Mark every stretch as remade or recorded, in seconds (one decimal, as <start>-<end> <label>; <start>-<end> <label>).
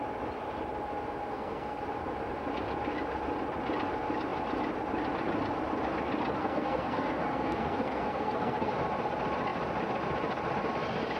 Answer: 0.0-1.3 recorded; 1.3-1.8 remade; 1.8-6.4 recorded; 6.4-8.7 remade; 8.7-11.2 recorded